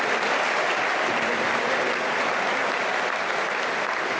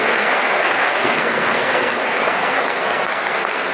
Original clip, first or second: first